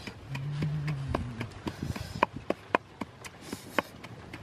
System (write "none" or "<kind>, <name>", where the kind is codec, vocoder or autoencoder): none